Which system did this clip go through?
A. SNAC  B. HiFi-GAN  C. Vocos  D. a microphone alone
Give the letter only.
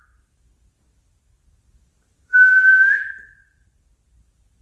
D